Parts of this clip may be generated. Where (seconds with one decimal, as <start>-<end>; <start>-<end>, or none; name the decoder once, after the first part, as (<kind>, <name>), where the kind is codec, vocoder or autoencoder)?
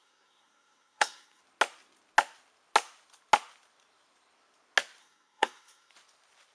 0.0-1.4 (codec, SNAC); 5.0-5.9